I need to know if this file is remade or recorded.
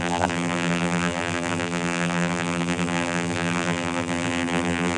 remade